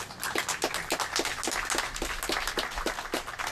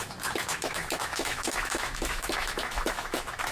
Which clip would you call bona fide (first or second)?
first